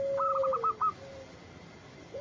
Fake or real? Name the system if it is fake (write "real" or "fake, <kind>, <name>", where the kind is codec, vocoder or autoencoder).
real